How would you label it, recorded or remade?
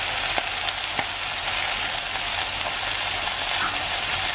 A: recorded